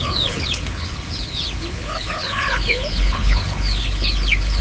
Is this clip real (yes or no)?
no